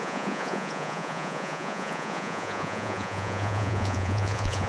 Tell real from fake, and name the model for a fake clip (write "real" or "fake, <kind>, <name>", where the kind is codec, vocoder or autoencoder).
fake, vocoder, Vocos